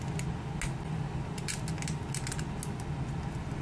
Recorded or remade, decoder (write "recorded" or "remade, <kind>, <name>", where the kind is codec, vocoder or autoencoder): recorded